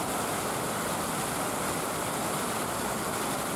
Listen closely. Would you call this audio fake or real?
real